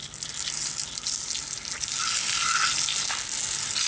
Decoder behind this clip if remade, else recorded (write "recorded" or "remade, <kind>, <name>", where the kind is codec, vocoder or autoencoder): recorded